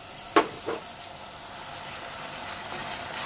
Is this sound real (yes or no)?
yes